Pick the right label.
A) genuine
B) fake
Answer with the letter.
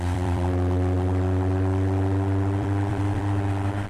B